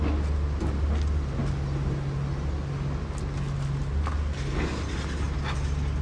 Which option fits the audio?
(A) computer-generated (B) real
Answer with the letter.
B